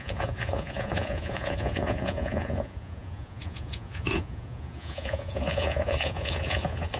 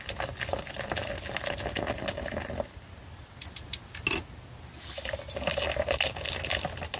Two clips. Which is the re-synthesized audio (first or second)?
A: first